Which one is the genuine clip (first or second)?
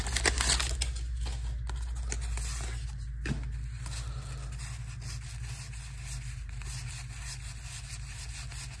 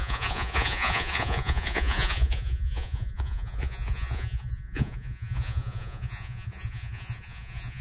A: first